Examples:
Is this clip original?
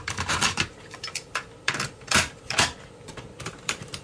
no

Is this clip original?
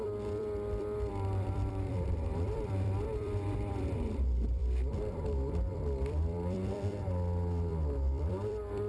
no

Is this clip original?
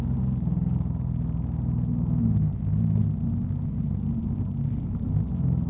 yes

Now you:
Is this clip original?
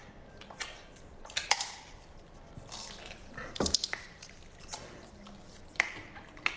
yes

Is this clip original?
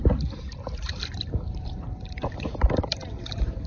no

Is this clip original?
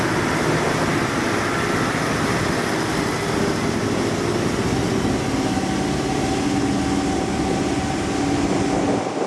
yes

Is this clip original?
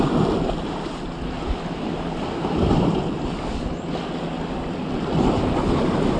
yes